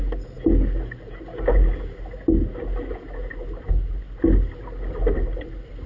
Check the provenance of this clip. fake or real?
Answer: real